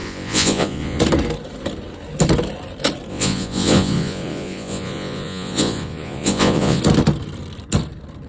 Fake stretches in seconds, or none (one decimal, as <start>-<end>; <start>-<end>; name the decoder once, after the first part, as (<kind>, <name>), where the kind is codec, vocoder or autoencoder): 0.0-1.0 (vocoder, Vocos); 3.1-6.8